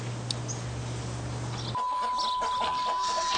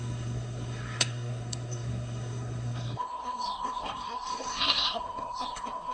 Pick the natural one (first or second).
first